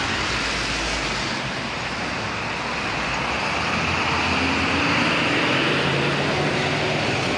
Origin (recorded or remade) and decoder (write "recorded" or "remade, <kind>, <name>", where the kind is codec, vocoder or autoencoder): recorded